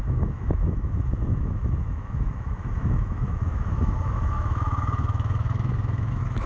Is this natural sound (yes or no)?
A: no